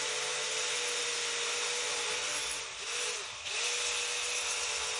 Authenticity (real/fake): real